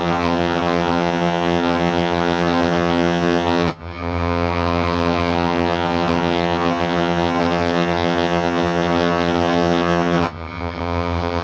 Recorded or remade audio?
remade